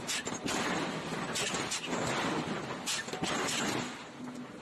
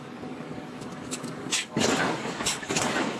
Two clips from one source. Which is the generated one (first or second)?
second